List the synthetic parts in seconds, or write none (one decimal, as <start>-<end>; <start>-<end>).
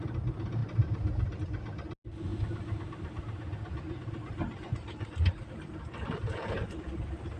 none